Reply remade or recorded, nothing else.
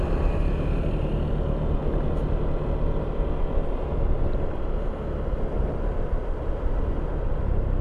recorded